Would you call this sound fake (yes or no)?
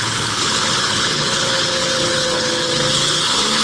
yes